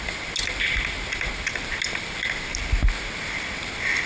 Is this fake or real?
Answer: real